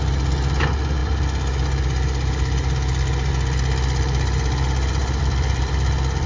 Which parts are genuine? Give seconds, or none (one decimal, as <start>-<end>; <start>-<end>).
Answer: 0.0-5.0